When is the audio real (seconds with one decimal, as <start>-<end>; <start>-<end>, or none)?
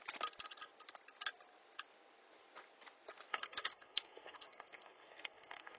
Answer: 0.0-3.3